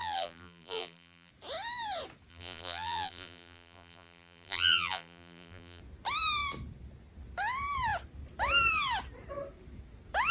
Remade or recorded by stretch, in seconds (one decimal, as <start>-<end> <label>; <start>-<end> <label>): 0.0-1.3 remade; 1.3-2.3 recorded; 2.3-5.8 remade; 5.8-10.3 recorded